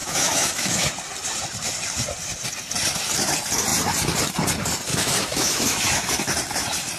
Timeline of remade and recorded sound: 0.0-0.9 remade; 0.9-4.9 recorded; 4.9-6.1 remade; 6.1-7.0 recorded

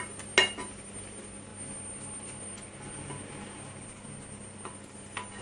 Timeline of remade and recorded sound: 0.0-5.4 recorded

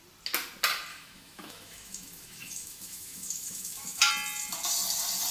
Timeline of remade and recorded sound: 0.0-0.9 recorded; 0.9-4.1 remade; 4.1-5.3 recorded

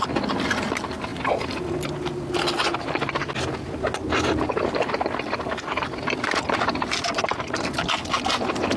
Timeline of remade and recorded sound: 0.0-8.8 recorded

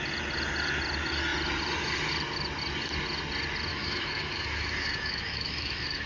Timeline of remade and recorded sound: 0.0-3.7 recorded; 3.7-6.1 remade

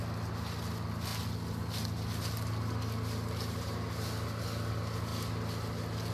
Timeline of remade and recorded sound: 0.0-6.1 recorded

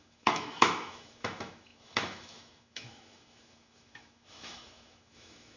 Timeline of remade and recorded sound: 0.0-5.6 remade

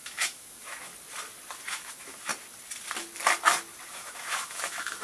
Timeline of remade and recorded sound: 0.0-0.9 remade; 0.9-1.7 recorded; 1.7-2.3 remade; 2.3-3.9 recorded; 3.9-5.0 remade